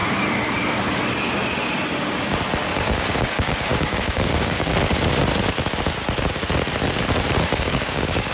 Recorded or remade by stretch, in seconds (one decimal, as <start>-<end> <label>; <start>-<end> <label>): 0.0-2.7 recorded; 2.7-4.7 remade; 4.7-7.6 recorded; 7.6-8.3 remade